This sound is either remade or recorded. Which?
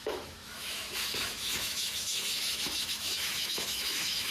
remade